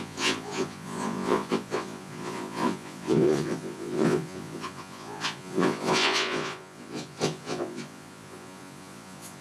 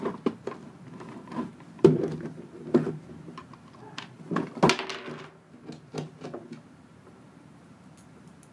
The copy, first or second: first